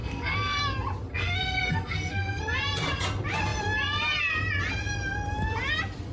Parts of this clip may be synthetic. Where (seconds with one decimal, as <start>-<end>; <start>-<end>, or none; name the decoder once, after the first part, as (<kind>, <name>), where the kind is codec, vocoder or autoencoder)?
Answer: 0.0-0.6 (codec, SNAC); 1.1-2.4